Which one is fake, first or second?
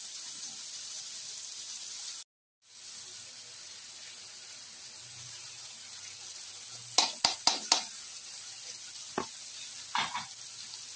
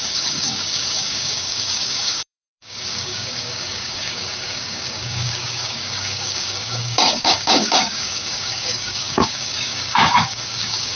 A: second